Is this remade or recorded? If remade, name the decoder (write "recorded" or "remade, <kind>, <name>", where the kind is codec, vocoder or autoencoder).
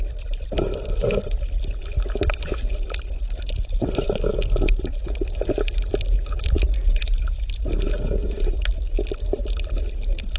recorded